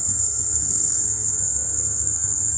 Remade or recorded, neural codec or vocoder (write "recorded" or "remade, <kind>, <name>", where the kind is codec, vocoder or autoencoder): remade, codec, SNAC